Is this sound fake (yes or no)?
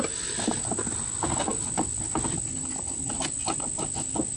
no